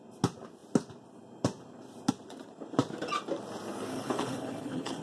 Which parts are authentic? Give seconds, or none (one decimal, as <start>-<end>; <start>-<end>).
0.0-3.9

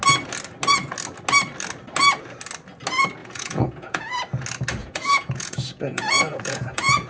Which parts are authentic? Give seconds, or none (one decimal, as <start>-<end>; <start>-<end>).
0.0-3.2; 4.2-4.8

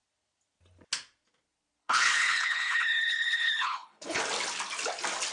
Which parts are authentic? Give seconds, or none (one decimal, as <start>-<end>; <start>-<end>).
0.0-1.8; 4.2-5.3

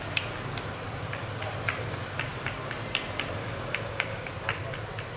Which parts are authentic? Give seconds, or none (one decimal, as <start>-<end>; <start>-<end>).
0.0-3.4; 4.3-5.2

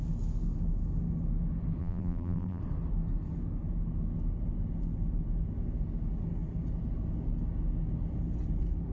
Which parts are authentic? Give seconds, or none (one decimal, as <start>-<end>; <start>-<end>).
0.0-1.8; 2.6-8.9